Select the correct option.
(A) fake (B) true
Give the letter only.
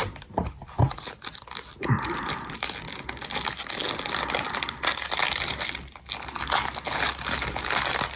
B